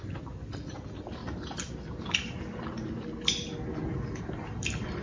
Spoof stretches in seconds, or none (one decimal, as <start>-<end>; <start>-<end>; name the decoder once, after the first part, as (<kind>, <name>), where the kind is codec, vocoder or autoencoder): 0.7-1.2 (vocoder, BigVGAN v2); 4.2-5.0